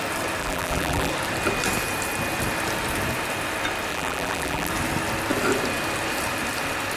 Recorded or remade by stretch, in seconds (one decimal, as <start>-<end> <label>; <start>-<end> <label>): 0.0-0.4 recorded; 0.4-1.1 remade; 1.1-3.9 recorded; 3.9-4.7 remade; 4.7-7.0 recorded